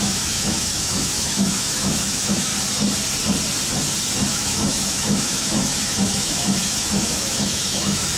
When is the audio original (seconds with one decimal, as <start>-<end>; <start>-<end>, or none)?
2.5-4.3